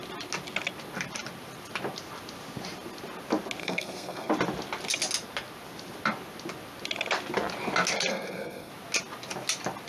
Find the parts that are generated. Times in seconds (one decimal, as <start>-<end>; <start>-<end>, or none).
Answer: 3.6-4.3; 8.1-8.7